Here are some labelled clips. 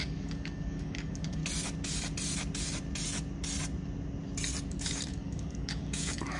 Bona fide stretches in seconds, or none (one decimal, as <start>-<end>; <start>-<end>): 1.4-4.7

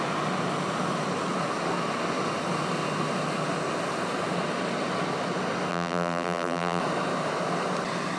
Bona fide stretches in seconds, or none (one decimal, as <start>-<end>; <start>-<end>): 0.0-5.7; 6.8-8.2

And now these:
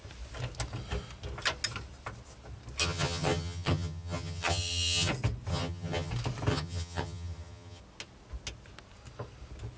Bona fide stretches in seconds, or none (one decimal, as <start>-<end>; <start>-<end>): 0.0-2.8; 5.1-5.5; 6.1-6.5; 7.8-9.8